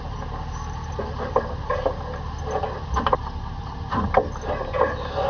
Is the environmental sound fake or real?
real